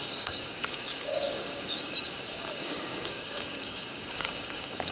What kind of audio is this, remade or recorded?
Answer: remade